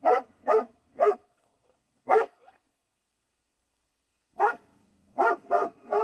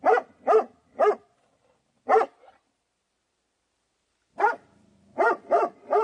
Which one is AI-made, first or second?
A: first